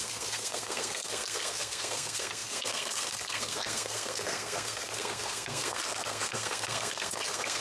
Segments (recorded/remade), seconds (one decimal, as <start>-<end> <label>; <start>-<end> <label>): 0.0-7.6 remade